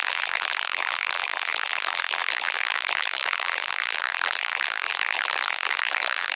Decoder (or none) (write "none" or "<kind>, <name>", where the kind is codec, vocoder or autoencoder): vocoder, BigVGAN v2